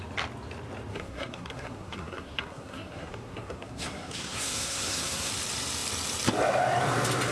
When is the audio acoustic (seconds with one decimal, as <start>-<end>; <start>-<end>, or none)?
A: 0.0-0.9; 5.3-7.3